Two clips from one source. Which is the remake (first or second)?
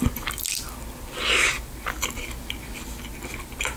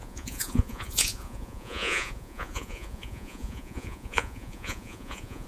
second